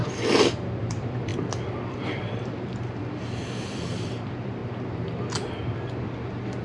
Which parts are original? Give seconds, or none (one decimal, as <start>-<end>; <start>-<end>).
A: 0.0-0.9; 1.3-1.9; 4.6-6.0